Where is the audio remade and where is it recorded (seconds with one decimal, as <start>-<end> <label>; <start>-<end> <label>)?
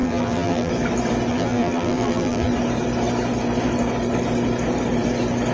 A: 0.0-0.7 remade; 0.7-1.3 recorded; 1.3-2.5 remade; 2.5-5.5 recorded